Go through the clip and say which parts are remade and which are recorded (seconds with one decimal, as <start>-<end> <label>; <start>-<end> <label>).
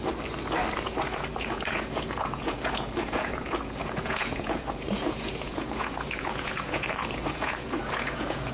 0.0-0.7 recorded; 0.7-8.5 remade